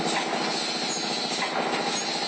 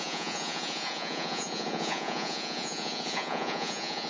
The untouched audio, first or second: first